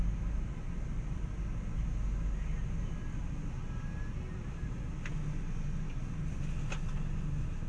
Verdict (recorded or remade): recorded